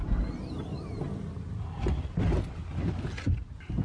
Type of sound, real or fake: real